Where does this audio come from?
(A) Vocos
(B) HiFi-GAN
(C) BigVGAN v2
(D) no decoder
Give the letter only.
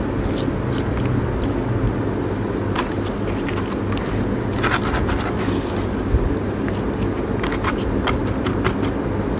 D